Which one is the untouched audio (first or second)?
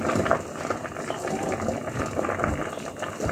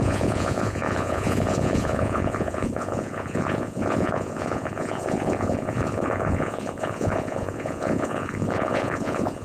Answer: first